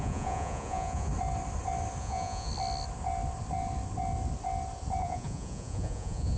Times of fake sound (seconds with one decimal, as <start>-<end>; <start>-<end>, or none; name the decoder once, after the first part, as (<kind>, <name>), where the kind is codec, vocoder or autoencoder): 0.0-1.1 (vocoder, Vocos); 2.0-2.5; 5.0-6.4